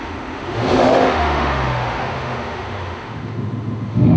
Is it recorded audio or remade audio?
remade